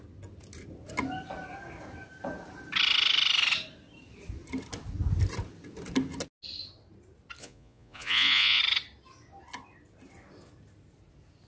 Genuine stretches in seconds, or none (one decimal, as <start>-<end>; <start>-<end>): 0.0-7.4; 8.6-11.5